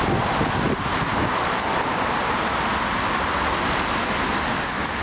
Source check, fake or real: real